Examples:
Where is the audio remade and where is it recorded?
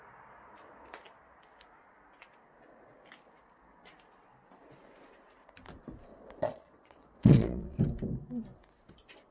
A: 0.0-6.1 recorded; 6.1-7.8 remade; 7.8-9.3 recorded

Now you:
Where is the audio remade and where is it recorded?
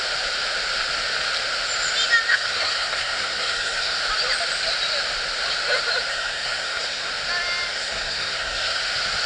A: 0.0-2.3 recorded; 2.3-4.0 remade; 4.0-6.1 recorded; 6.1-7.1 remade; 7.1-7.7 recorded; 7.7-8.8 remade; 8.8-9.3 recorded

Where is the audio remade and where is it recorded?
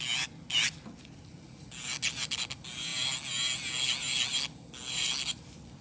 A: 0.0-5.8 recorded